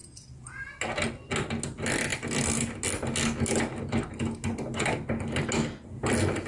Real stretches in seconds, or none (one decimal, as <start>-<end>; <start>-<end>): 0.7-6.5